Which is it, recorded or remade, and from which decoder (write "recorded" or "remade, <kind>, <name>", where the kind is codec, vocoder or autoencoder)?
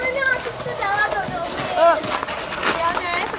recorded